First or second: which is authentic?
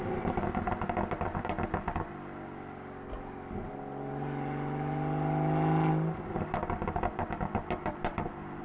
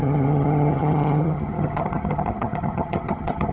first